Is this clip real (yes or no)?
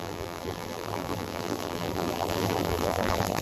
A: no